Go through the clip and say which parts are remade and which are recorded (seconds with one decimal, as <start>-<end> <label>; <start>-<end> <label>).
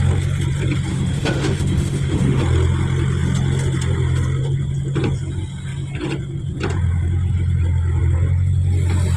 0.0-0.9 recorded; 0.9-2.4 remade; 2.4-9.2 recorded